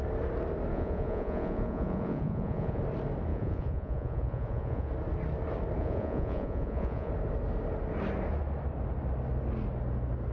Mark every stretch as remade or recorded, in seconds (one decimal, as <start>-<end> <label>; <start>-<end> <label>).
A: 0.0-0.7 recorded; 0.7-2.8 remade; 2.8-3.3 recorded; 3.3-4.9 remade; 4.9-5.8 recorded; 5.8-7.1 remade; 7.1-10.3 recorded

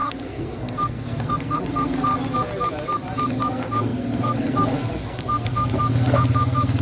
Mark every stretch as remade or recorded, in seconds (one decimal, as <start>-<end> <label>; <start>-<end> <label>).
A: 0.0-2.1 remade; 2.1-3.3 recorded; 3.3-6.8 remade

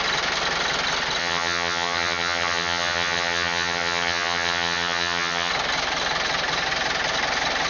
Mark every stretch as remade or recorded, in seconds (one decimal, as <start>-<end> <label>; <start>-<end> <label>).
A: 0.0-1.2 recorded; 1.2-5.5 remade; 5.5-7.7 recorded

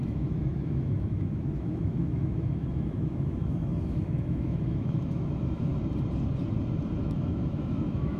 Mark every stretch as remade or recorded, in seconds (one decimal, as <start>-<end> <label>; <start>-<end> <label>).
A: 0.0-5.7 remade; 5.7-7.0 recorded; 7.0-8.2 remade

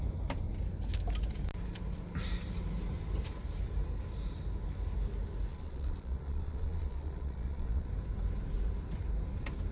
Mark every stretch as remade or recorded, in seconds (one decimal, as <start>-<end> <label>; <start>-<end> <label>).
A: 0.0-5.5 recorded; 5.5-7.9 remade; 7.9-9.7 recorded

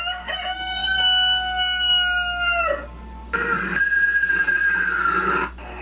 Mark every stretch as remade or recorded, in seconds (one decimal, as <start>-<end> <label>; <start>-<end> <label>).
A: 0.0-5.8 recorded